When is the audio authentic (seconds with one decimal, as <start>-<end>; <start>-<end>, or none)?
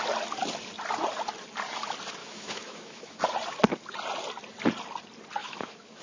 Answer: 0.0-2.2; 3.2-5.4